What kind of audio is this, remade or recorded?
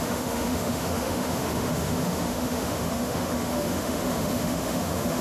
remade